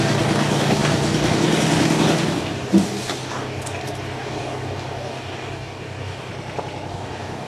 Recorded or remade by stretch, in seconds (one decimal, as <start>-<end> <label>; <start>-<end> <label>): 0.0-6.3 remade; 6.3-6.9 recorded; 6.9-7.5 remade